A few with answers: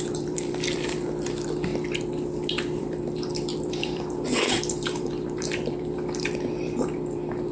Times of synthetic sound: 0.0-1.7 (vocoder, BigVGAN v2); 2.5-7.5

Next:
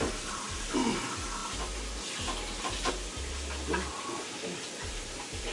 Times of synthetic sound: none

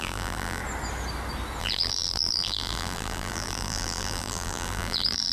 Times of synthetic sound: 0.0-0.6 (vocoder, BigVGAN v2); 1.6-5.3

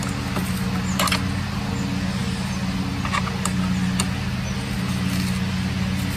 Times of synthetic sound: none

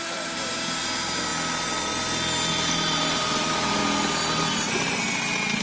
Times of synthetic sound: 0.0-1.3 (vocoder, BigVGAN v2); 2.5-3.8

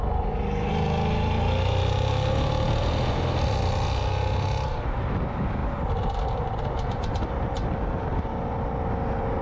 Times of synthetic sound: 5.6-7.1 (vocoder, BigVGAN v2)

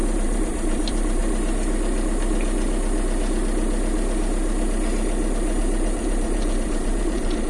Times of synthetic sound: 0.0-1.2 (vocoder, BigVGAN v2); 5.6-7.5

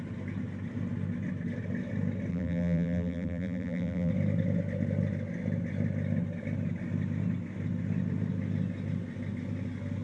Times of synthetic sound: 2.3-4.1 (vocoder, BigVGAN v2)